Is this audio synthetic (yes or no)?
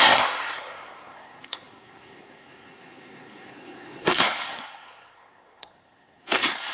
yes